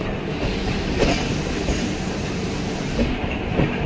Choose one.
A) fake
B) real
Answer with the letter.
A